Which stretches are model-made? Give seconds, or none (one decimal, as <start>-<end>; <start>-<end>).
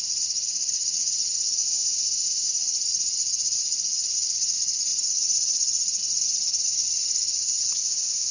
0.0-1.6; 2.5-7.8